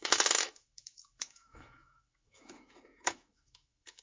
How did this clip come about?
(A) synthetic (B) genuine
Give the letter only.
A